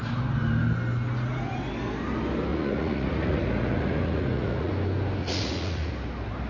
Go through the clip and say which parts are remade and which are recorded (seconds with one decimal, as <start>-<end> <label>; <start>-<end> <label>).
0.0-2.5 recorded; 2.5-4.7 remade; 4.7-5.2 recorded; 5.2-5.9 remade; 5.9-6.5 recorded